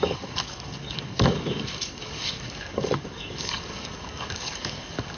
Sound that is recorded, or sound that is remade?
remade